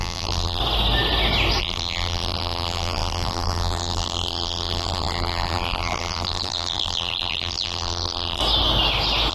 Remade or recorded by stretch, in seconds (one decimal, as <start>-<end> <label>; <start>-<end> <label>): 0.0-0.6 remade; 0.6-1.6 recorded; 1.6-8.4 remade; 8.4-9.3 recorded